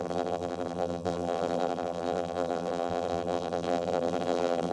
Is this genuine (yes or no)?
no